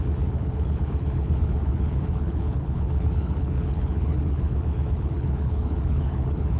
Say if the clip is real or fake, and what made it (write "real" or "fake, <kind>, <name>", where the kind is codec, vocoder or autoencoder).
fake, codec, HILCodec